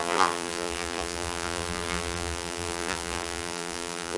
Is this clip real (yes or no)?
no